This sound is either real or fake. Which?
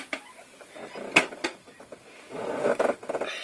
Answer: real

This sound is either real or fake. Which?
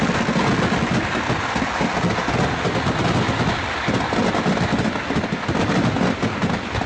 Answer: real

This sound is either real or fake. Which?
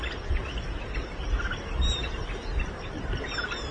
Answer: real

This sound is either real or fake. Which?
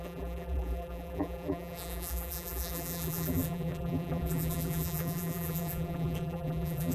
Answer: fake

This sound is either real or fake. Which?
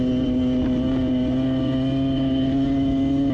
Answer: real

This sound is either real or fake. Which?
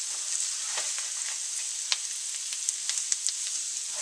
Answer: real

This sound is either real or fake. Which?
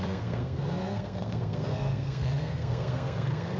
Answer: fake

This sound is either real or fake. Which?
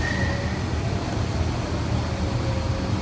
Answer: real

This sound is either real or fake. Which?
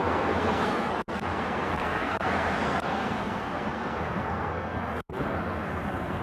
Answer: fake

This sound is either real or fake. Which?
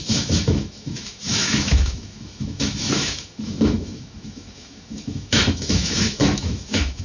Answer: fake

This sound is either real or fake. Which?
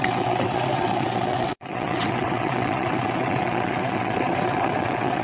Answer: fake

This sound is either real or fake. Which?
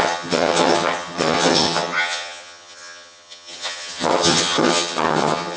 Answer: fake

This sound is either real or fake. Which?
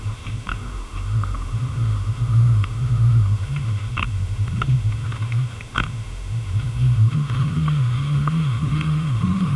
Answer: fake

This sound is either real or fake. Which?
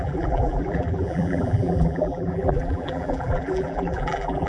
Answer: fake